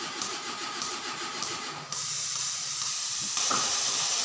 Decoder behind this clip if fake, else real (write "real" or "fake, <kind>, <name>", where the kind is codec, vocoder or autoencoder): fake, vocoder, BigVGAN v2